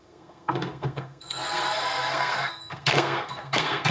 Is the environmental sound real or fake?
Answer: fake